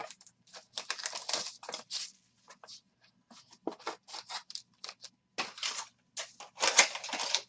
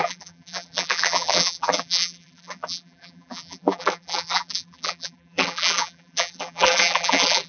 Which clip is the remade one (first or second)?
second